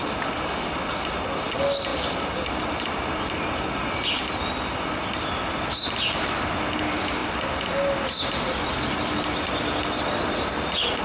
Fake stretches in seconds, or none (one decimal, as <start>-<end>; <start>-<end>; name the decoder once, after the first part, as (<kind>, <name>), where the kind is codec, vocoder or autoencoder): none